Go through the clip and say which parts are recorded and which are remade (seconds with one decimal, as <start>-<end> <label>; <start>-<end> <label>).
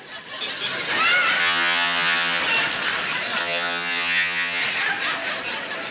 0.0-1.4 recorded; 1.4-2.4 remade; 2.4-3.4 recorded; 3.4-4.6 remade; 4.6-5.9 recorded